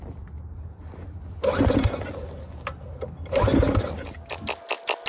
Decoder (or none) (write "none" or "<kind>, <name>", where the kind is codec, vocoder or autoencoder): none